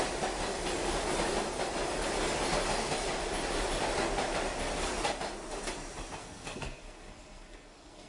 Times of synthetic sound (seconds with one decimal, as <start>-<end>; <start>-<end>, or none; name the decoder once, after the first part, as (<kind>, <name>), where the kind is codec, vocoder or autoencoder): 6.2-8.1 (codec, SNAC)